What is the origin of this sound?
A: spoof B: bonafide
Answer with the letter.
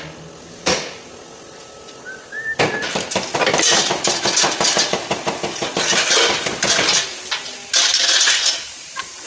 B